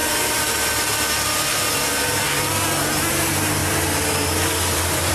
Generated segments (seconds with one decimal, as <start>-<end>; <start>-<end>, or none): 3.1-5.1